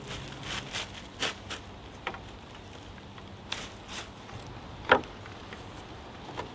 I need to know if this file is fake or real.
real